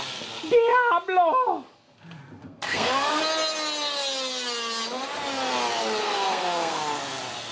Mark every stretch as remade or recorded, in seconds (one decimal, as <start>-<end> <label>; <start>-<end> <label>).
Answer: 0.0-2.4 recorded; 2.4-3.2 remade; 3.2-6.0 recorded; 6.0-6.8 remade; 6.8-7.5 recorded